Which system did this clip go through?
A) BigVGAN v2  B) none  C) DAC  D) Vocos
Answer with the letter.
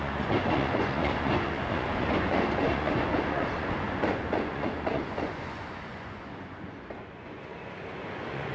D